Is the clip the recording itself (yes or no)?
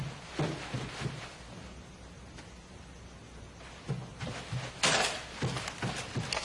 yes